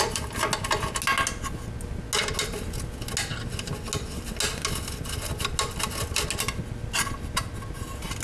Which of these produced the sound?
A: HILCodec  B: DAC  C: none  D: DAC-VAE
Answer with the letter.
C